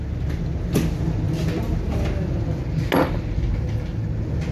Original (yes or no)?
yes